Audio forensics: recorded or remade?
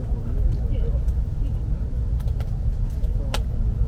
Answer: recorded